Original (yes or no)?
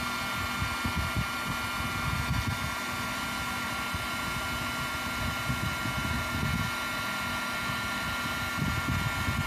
yes